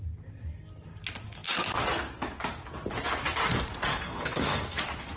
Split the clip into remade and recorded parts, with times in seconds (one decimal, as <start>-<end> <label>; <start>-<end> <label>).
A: 0.0-3.9 recorded; 3.9-4.8 remade; 4.8-5.2 recorded